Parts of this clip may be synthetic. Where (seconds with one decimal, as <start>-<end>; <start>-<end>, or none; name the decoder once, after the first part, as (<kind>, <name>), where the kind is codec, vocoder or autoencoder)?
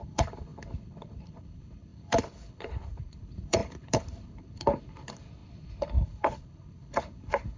0.0-7.6 (codec, HILCodec)